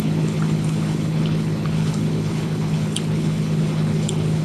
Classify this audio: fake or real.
fake